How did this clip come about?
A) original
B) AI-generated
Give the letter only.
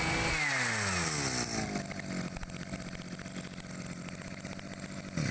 A